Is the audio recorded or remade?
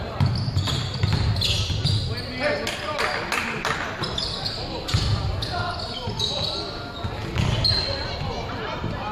recorded